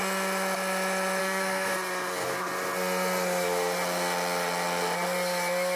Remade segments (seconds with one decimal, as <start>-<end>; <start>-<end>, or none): 1.2-1.7